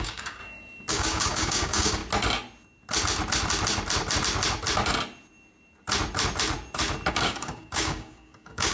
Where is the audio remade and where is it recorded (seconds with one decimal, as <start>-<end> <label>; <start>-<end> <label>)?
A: 0.0-0.4 remade; 0.4-0.9 recorded; 0.9-2.0 remade; 2.0-7.1 recorded; 7.1-8.7 remade